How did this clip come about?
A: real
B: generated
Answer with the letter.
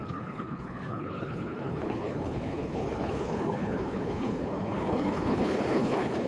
B